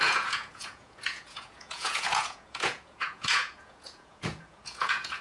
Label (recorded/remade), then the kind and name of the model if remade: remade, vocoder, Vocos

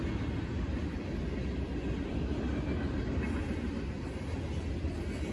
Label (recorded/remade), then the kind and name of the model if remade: recorded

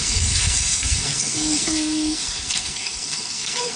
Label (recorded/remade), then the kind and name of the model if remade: remade, codec, SNAC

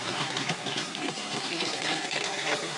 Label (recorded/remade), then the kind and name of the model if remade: remade, codec, SNAC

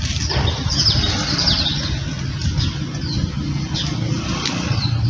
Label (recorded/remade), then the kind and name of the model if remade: recorded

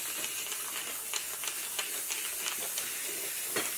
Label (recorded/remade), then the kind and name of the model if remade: recorded